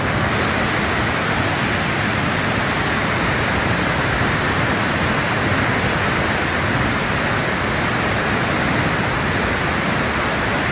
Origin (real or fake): real